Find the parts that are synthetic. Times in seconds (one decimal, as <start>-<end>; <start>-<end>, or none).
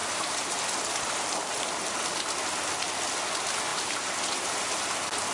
0.0-0.6; 3.7-4.8